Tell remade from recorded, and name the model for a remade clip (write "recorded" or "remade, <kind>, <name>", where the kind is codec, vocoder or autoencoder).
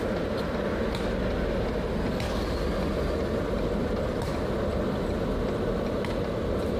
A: recorded